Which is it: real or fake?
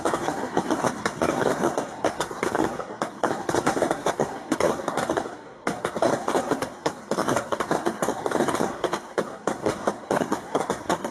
fake